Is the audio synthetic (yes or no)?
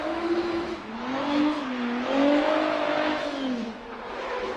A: yes